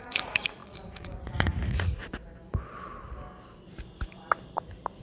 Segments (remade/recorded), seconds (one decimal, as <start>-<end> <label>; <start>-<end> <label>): 0.0-2.0 remade; 2.0-5.0 recorded